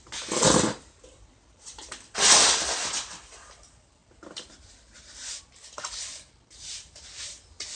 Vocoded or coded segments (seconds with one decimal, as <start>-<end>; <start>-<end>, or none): none